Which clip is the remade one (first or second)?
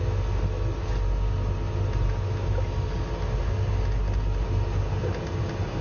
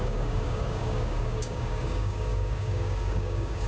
second